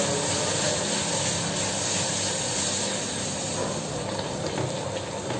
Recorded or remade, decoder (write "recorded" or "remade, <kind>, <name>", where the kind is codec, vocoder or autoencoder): recorded